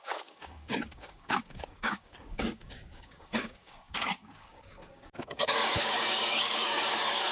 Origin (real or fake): fake